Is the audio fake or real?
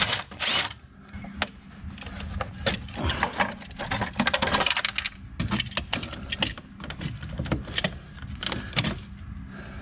real